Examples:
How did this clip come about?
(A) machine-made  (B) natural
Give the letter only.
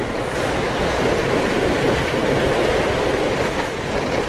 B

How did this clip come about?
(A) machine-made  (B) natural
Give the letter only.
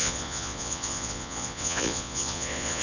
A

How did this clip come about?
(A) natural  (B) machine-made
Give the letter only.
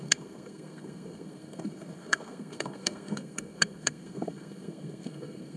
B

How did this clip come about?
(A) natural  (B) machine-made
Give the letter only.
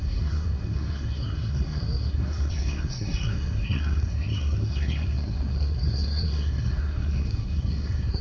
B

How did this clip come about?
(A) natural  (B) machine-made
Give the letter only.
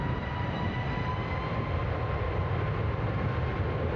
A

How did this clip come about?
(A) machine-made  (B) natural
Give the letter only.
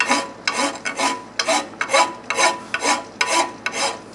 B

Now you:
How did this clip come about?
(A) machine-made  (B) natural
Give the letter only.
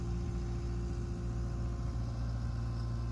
B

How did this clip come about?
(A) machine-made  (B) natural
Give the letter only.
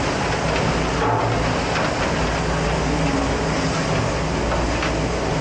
B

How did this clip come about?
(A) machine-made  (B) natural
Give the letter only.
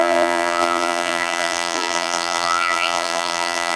A